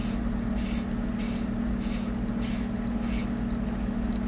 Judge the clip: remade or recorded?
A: recorded